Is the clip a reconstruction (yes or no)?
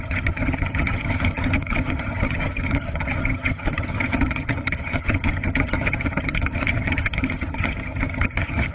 yes